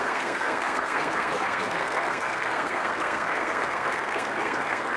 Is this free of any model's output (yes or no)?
no